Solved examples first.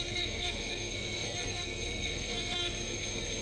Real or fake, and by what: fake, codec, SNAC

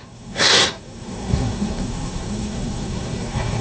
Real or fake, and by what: fake, codec, SNAC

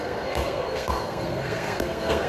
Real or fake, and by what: fake, codec, SNAC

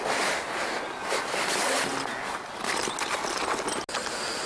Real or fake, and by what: real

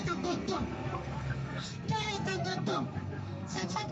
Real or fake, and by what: fake, codec, SNAC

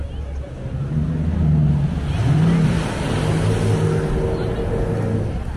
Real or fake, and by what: real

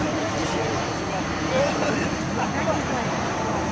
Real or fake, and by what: real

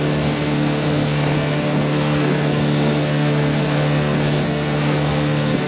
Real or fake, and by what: fake, codec, SNAC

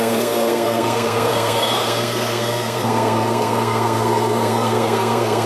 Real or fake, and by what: fake, codec, SNAC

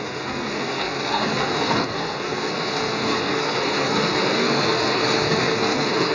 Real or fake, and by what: fake, codec, SNAC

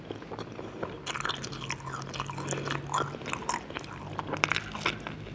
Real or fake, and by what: real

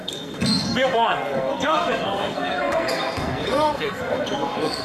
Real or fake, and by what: fake, codec, SNAC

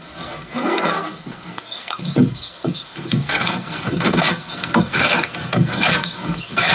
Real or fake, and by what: fake, codec, SNAC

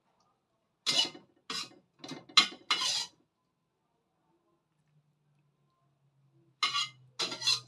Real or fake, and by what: real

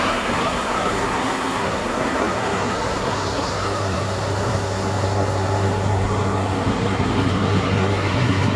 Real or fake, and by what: fake, codec, SNAC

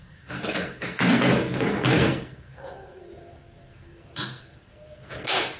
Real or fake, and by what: fake, codec, SNAC